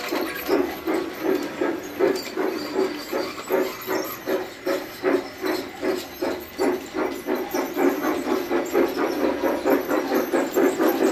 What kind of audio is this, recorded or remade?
recorded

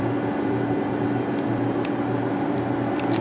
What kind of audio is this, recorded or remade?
remade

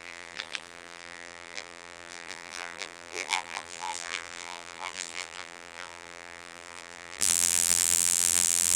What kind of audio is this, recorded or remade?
remade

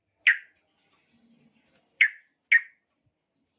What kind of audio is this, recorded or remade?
recorded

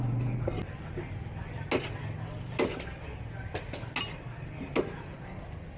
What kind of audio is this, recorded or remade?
recorded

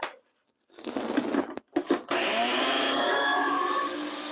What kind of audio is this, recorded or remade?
recorded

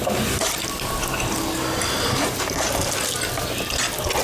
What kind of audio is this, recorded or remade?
recorded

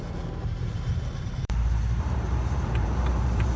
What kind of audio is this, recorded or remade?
remade